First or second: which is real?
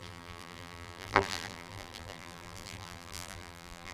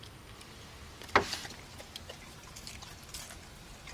second